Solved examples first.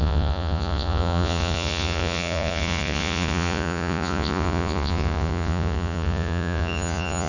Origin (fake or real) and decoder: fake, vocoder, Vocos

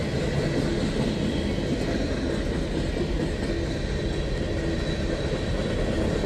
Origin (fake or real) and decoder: real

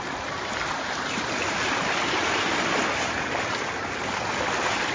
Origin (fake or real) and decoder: real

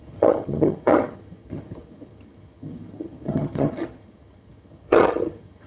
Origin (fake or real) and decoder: fake, vocoder, HiFi-GAN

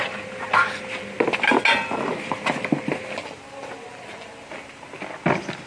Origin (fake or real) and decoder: real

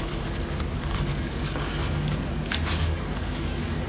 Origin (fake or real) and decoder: fake, codec, DAC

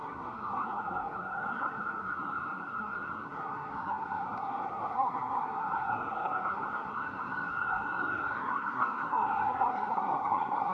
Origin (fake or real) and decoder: fake, codec, SNAC